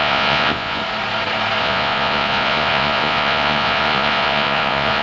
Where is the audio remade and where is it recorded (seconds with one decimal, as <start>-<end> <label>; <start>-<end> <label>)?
0.0-0.8 remade; 0.8-1.6 recorded; 1.6-5.0 remade